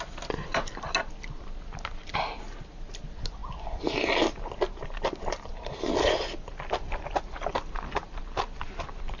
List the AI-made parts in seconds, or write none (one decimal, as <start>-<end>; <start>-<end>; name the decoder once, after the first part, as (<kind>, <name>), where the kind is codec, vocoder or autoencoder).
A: none